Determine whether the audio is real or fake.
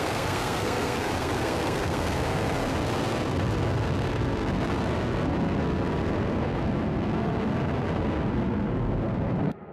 fake